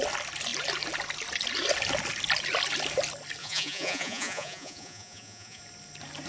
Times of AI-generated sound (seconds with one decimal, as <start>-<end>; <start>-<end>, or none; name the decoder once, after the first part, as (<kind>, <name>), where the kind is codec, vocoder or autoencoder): 3.4-5.6 (vocoder, Vocos)